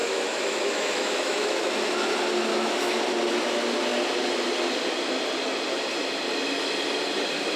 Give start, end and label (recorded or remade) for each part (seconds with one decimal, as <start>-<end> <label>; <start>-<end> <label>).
0.0-1.7 remade; 1.7-2.5 recorded; 2.5-3.0 remade; 3.0-7.6 recorded